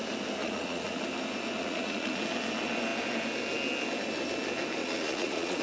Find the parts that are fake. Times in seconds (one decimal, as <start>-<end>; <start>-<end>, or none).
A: 0.4-1.0; 1.6-2.2; 4.8-5.6